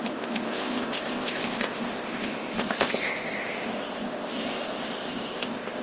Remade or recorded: remade